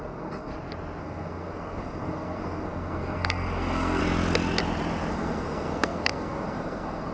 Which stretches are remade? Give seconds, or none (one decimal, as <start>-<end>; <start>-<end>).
0.0-0.5; 1.0-4.0; 5.1-7.1